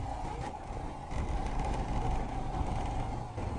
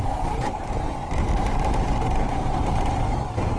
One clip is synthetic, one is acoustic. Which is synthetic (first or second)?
second